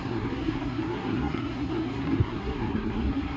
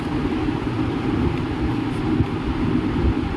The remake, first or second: first